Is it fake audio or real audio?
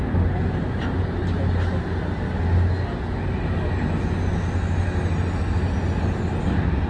real